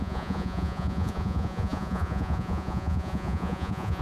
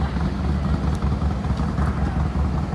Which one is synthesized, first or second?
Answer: first